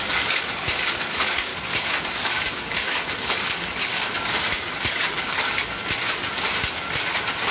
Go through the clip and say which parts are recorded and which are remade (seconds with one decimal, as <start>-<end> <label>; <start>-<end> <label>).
0.0-1.5 remade; 1.5-2.0 recorded; 2.0-3.9 remade; 3.9-4.8 recorded; 4.8-5.8 remade; 5.8-7.5 recorded